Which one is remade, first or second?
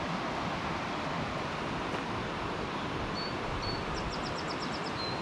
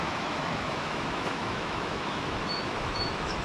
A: second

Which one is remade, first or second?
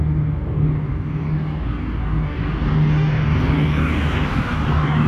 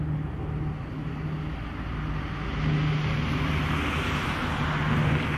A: first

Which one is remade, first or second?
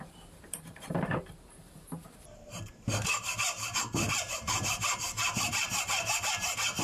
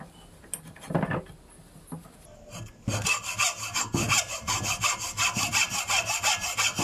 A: first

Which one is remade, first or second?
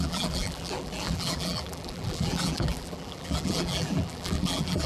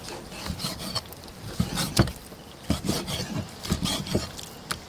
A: first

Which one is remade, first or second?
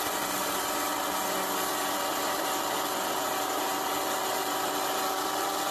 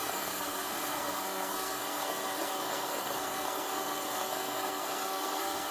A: second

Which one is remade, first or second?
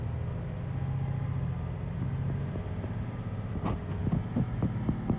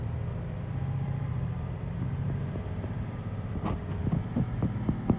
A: second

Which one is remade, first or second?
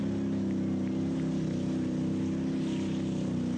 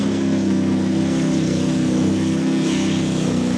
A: second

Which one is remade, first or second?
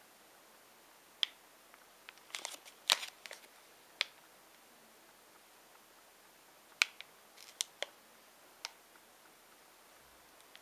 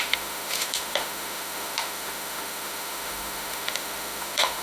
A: second